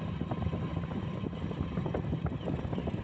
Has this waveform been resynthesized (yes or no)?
no